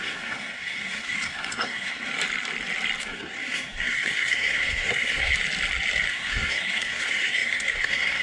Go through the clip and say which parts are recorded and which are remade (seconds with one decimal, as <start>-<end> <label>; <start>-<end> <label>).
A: 0.0-2.1 remade; 2.1-3.0 recorded; 3.0-5.3 remade; 5.3-6.1 recorded; 6.1-8.2 remade